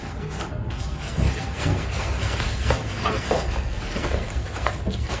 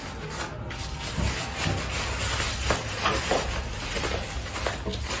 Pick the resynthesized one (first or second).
first